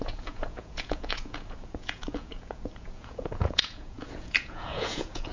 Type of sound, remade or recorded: remade